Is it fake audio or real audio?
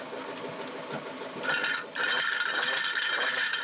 real